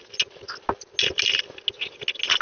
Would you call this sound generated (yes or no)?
no